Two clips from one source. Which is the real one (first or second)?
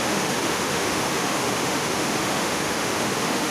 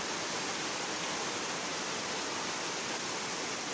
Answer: second